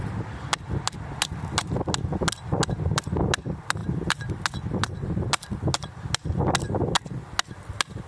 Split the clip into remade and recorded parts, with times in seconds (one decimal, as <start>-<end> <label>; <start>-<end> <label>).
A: 0.0-3.8 recorded; 3.8-4.4 remade; 4.4-8.1 recorded